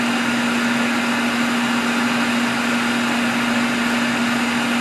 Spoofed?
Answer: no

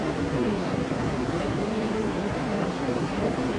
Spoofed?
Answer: yes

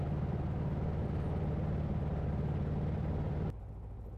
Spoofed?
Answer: no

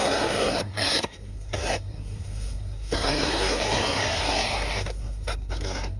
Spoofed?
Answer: yes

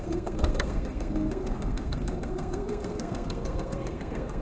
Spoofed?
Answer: yes